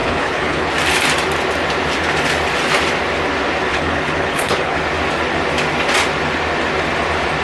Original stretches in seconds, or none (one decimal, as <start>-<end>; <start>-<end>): 0.7-3.7; 4.8-7.4